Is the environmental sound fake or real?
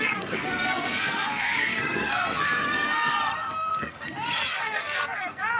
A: fake